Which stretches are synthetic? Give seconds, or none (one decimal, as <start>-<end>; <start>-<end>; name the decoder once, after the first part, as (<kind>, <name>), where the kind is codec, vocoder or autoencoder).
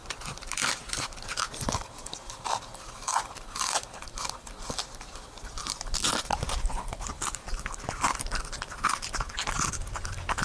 5.6-6.7 (vocoder, BigVGAN v2)